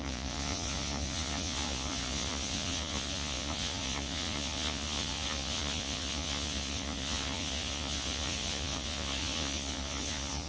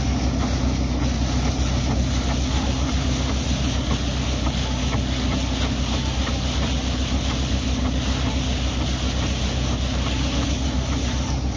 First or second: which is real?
second